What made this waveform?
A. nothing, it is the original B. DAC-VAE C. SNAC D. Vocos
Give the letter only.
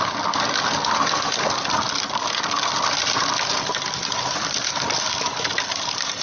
A